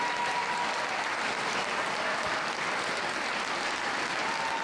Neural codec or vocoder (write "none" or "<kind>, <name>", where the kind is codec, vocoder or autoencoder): none